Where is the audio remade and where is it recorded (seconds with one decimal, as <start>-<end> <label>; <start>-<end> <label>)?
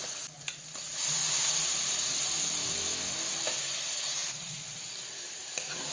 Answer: 0.0-2.6 recorded; 2.6-3.4 remade; 3.4-5.9 recorded